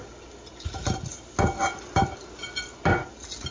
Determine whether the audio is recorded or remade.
recorded